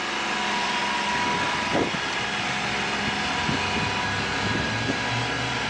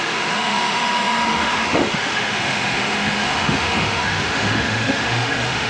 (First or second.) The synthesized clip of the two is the second